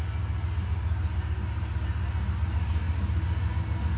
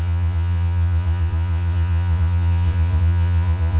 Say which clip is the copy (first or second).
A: second